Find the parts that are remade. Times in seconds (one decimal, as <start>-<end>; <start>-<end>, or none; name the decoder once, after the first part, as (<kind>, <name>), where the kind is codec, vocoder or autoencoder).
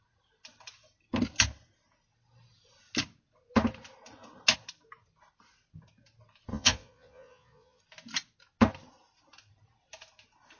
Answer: 6.5-7.8 (vocoder, Vocos)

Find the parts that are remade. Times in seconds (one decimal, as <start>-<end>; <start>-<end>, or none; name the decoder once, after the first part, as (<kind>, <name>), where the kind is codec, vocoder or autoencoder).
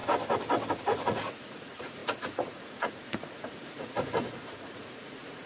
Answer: 0.8-5.5 (vocoder, Vocos)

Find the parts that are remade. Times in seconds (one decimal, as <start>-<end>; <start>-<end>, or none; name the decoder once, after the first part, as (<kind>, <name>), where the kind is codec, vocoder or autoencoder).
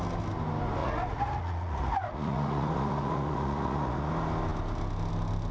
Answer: 0.8-4.1 (vocoder, Vocos)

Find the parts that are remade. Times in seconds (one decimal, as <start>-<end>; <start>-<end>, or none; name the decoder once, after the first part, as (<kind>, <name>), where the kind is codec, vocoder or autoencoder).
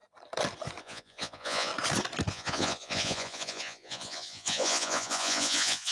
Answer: 0.8-1.7 (vocoder, Vocos); 2.3-5.9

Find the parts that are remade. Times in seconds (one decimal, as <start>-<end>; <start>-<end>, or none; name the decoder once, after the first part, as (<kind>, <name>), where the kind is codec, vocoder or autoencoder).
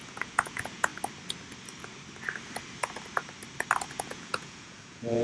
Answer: 0.0-0.9 (vocoder, Vocos); 4.0-5.2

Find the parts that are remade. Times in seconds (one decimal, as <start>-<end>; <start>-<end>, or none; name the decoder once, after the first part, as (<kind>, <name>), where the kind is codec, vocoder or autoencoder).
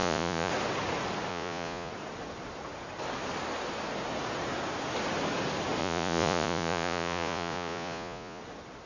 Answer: 0.0-0.5 (vocoder, Vocos); 1.3-1.9; 5.8-8.4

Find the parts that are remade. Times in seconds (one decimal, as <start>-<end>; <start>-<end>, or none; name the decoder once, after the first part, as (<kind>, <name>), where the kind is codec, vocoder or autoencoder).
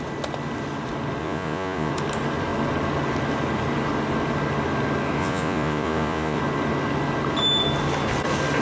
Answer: 1.2-1.9 (vocoder, Vocos); 5.2-6.4